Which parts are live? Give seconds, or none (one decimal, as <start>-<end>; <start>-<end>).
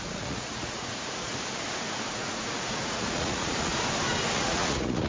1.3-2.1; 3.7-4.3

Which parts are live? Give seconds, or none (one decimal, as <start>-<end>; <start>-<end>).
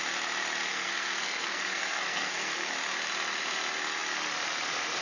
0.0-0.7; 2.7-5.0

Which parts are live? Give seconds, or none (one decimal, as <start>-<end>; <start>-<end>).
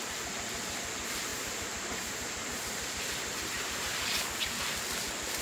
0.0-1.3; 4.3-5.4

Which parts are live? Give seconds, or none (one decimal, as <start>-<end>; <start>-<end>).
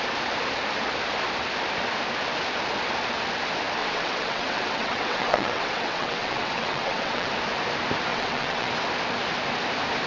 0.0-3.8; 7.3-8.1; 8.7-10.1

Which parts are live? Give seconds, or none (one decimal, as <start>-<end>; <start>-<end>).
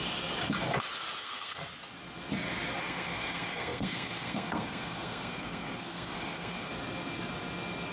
0.0-1.2; 1.6-2.8; 6.7-7.9